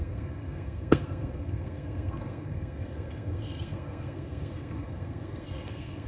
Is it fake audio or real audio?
fake